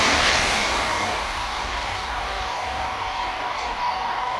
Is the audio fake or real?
fake